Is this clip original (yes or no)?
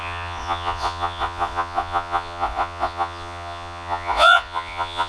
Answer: no